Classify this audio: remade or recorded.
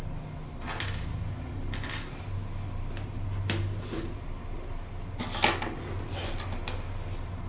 recorded